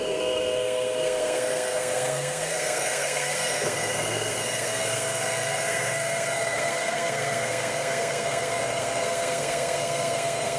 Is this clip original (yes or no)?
no